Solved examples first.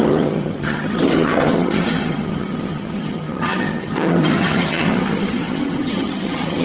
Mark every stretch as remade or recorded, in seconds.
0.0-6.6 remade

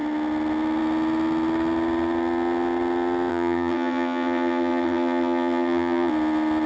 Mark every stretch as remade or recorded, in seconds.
0.0-3.3 recorded; 3.3-6.1 remade; 6.1-6.7 recorded

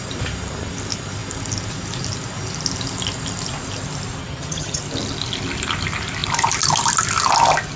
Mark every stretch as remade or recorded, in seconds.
0.0-4.2 recorded; 4.2-4.8 remade; 4.8-7.8 recorded

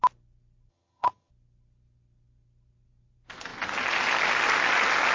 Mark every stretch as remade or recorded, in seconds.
0.0-0.7 recorded; 0.7-1.3 remade; 1.3-5.1 recorded

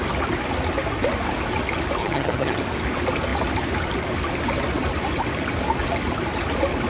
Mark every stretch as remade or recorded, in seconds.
0.0-2.0 recorded; 2.0-2.6 remade; 2.6-6.9 recorded